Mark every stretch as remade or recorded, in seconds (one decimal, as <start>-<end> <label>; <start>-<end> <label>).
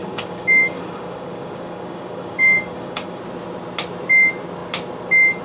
0.0-3.2 remade; 3.2-5.4 recorded